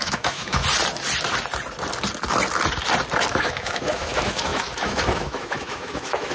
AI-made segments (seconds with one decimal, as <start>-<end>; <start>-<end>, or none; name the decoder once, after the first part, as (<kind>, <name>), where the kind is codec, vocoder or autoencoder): 0.0-0.6 (autoencoder, DAC-VAE); 3.3-6.3